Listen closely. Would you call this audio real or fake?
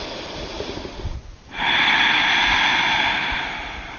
real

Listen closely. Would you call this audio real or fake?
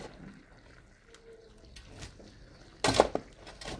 real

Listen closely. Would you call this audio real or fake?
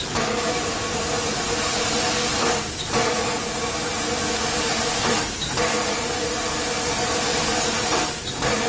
real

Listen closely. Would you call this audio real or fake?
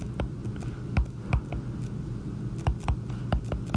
real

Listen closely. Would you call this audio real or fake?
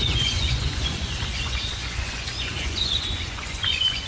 fake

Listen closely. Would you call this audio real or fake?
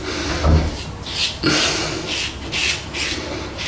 real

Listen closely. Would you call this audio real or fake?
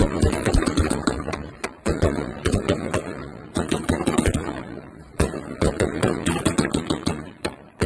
fake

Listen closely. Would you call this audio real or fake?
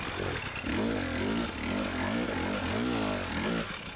real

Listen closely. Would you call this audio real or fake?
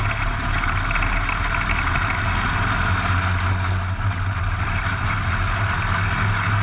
real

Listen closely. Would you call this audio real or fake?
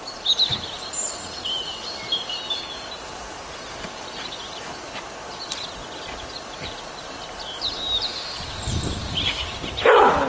real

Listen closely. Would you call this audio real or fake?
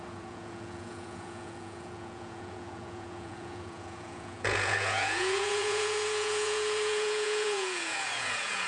fake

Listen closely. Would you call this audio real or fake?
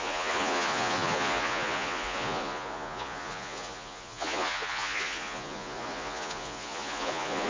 fake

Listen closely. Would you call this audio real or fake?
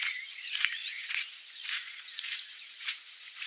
fake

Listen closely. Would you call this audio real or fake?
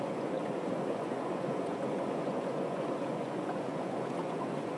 fake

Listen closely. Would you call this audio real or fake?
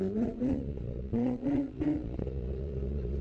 fake